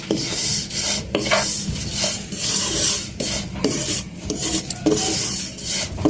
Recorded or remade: recorded